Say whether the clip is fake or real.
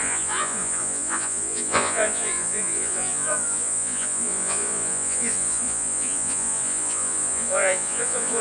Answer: fake